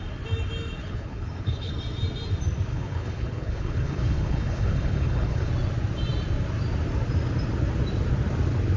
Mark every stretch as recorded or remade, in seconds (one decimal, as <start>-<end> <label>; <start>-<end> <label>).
0.0-0.8 recorded; 0.8-1.7 remade; 1.7-2.7 recorded; 2.7-5.5 remade; 5.5-8.8 recorded